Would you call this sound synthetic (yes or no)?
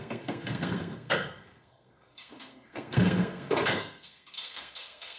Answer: yes